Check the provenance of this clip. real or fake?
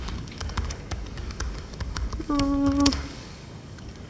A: fake